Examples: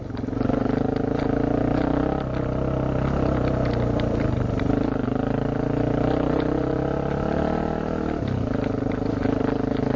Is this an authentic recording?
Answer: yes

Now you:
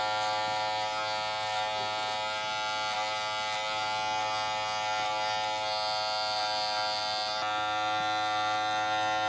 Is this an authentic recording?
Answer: yes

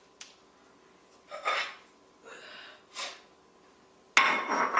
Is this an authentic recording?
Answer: yes